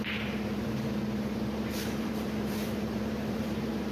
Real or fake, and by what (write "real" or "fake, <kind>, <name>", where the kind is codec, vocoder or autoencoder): fake, vocoder, BigVGAN v2